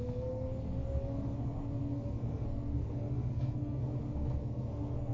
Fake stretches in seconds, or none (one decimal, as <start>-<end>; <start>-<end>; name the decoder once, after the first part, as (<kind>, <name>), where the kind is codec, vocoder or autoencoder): 0.0-3.8 (codec, SNAC); 4.4-5.1

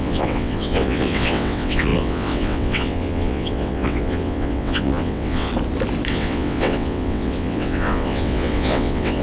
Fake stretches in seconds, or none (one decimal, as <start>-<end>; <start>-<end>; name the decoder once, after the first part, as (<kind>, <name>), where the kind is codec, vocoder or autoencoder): 0.0-5.5 (vocoder, WaveNeXt); 6.1-9.2

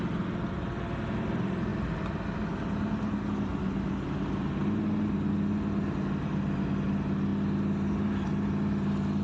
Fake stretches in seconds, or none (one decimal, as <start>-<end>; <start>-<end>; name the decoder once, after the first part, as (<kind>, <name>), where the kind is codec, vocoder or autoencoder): none

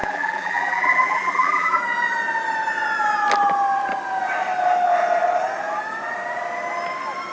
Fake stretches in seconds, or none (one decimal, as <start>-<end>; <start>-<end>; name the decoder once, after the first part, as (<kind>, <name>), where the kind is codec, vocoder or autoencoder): 0.0-1.8 (vocoder, BigVGAN v2)

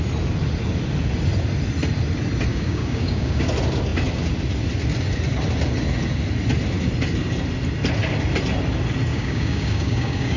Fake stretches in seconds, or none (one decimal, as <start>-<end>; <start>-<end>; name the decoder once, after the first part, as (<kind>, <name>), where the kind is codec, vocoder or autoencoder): 2.5-3.5 (codec, DAC); 9.1-10.4

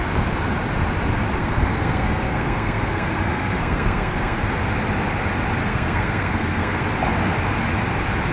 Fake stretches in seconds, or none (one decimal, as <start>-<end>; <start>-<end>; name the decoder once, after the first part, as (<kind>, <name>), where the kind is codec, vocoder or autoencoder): 1.4-4.4 (codec, SNAC); 5.6-6.8

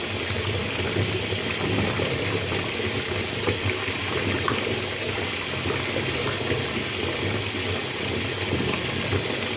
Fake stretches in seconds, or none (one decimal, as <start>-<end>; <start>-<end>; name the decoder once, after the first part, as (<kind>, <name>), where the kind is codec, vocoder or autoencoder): none

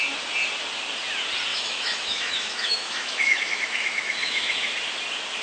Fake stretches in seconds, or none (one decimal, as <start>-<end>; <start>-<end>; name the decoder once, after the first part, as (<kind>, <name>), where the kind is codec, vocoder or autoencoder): 1.5-4.7 (autoencoder, DAC-VAE)